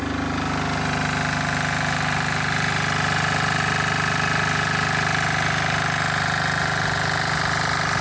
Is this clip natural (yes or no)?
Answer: yes